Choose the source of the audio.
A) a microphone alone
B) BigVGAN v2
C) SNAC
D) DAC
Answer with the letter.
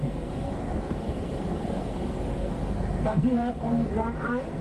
C